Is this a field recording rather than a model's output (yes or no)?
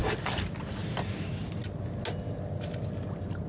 yes